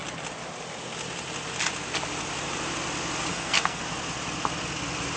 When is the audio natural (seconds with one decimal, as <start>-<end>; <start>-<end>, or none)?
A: 0.0-3.3; 3.8-5.2